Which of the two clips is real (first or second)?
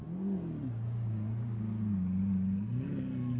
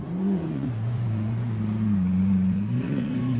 first